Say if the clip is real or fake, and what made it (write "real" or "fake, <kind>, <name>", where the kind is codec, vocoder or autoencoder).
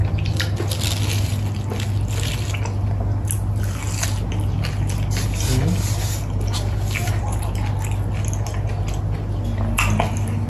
real